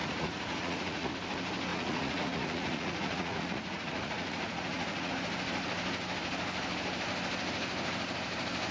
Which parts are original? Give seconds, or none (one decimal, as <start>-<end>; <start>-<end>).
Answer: 1.1-1.7; 5.1-8.7